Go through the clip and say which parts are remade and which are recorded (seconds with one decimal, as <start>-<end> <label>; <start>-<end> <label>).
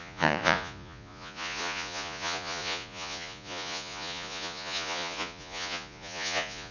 0.0-6.7 remade